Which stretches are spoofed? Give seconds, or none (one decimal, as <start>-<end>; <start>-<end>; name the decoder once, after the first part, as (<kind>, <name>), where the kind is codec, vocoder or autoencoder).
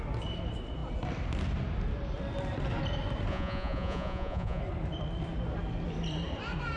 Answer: 3.3-4.6 (vocoder, Vocos)